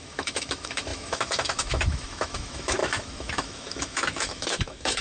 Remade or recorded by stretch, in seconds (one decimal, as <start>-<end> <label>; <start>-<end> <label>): 0.0-5.0 remade